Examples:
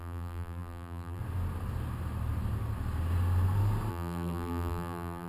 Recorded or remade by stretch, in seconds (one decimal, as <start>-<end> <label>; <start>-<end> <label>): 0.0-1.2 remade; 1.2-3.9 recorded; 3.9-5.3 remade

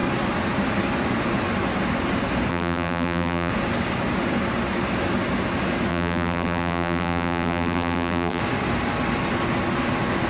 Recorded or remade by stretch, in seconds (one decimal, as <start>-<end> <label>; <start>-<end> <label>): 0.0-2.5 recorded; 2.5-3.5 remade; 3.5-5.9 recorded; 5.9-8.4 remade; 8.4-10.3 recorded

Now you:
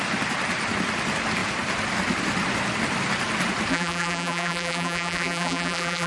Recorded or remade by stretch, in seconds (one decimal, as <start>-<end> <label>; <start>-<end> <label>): 0.0-3.7 recorded; 3.7-6.1 remade